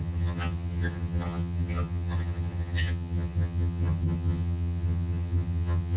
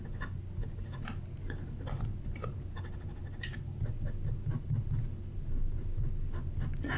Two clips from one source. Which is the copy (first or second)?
first